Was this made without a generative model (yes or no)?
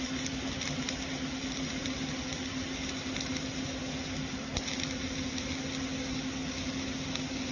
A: yes